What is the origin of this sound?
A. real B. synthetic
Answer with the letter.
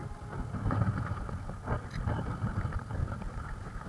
A